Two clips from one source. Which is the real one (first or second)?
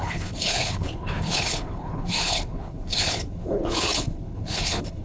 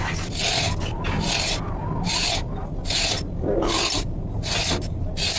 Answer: second